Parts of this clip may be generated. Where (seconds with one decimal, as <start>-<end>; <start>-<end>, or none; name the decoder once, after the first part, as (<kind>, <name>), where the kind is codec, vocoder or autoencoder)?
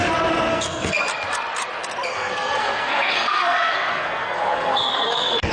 0.5-1.0 (codec, SNAC); 2.1-5.5